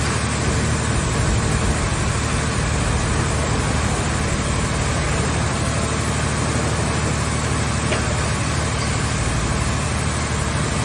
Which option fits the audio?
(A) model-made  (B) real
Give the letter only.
B